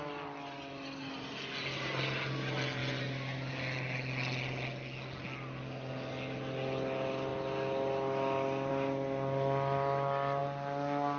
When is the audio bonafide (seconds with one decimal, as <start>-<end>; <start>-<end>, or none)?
0.0-11.2